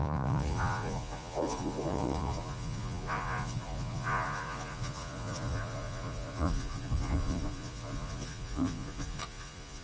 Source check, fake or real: fake